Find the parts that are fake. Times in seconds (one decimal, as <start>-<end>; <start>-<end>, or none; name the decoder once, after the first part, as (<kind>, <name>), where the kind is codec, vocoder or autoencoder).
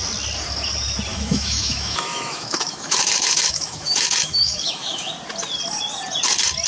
1.1-5.1 (autoencoder, DAC-VAE)